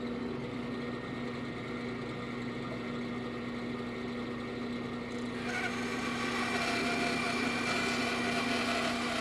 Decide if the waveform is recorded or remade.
recorded